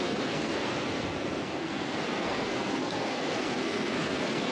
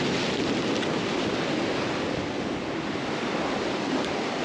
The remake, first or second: first